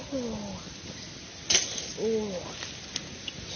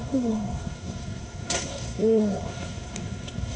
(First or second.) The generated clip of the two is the second